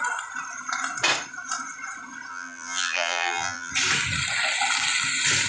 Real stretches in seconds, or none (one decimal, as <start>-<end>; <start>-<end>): 0.0-2.3; 3.7-5.5